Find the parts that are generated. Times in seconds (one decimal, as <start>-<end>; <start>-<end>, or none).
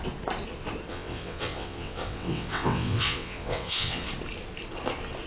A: 0.9-4.1